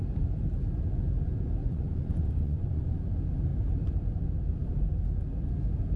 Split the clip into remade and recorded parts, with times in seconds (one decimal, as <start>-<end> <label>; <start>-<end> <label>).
0.0-1.6 recorded; 1.6-3.0 remade; 3.0-6.0 recorded